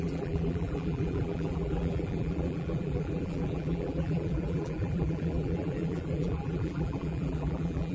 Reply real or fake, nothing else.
fake